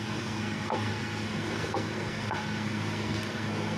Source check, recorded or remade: remade